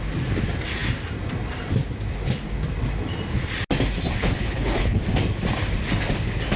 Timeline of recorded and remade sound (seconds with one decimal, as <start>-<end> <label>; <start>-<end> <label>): 0.0-4.2 recorded; 4.2-5.0 remade; 5.0-6.6 recorded